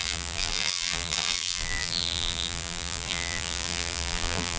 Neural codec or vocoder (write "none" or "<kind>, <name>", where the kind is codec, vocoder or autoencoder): vocoder, BigVGAN v2